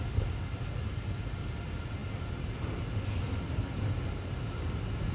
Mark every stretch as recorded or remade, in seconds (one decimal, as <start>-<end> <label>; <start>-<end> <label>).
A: 0.0-5.1 recorded

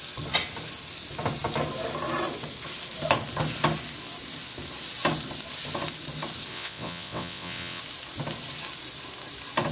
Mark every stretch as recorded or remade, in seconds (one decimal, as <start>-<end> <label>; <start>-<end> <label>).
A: 0.0-6.5 recorded; 6.5-7.8 remade; 7.8-9.7 recorded